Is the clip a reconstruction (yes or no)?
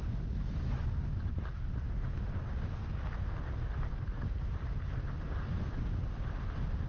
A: no